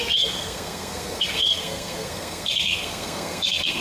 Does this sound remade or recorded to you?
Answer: remade